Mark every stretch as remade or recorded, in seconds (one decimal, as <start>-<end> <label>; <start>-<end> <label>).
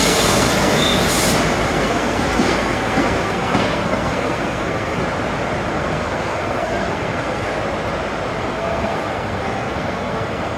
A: 0.0-0.9 remade; 0.9-1.7 recorded; 1.7-5.0 remade; 5.0-5.7 recorded; 5.7-7.5 remade; 7.5-8.4 recorded; 8.4-10.6 remade